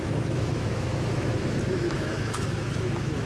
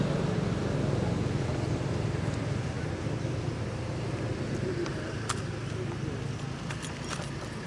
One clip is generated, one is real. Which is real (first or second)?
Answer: second